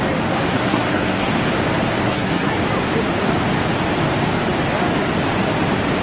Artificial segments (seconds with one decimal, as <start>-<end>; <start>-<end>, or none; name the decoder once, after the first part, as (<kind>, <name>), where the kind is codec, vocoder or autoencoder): 0.5-1.3 (codec, SNAC); 2.0-2.5